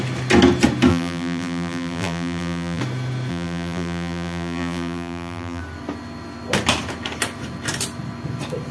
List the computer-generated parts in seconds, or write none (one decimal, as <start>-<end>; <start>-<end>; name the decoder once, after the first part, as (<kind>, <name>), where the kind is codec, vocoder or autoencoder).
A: 0.9-2.8 (vocoder, BigVGAN v2); 3.3-5.6